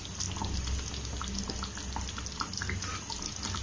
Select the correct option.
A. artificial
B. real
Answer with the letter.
B